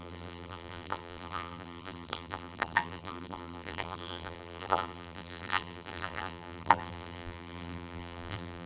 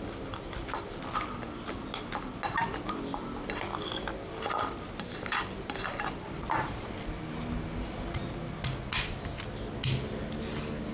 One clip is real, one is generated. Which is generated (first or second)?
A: first